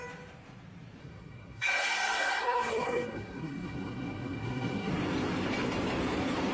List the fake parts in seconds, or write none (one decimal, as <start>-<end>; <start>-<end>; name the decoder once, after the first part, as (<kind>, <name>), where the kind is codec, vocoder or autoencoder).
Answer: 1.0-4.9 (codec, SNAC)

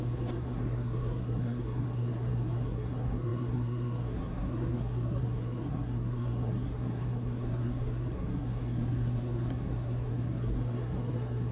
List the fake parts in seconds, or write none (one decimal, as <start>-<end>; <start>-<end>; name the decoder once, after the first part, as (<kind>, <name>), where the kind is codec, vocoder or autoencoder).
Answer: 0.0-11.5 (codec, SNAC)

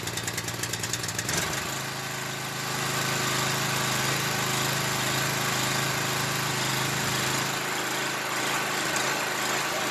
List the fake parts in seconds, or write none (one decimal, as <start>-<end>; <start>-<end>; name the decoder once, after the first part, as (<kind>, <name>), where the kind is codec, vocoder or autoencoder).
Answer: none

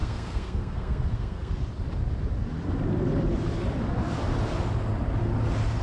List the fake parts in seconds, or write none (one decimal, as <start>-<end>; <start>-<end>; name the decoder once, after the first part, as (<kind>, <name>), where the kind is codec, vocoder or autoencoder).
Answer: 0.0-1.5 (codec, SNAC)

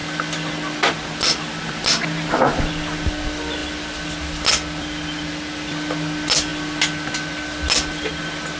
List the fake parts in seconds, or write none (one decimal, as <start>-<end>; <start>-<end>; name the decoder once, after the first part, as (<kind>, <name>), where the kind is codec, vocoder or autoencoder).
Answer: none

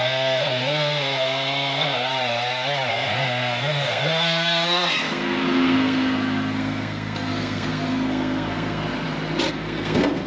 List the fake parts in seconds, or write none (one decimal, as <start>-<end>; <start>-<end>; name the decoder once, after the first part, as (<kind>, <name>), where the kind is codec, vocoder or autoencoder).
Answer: 0.0-2.1 (codec, SNAC); 2.9-8.8; 9.5-10.3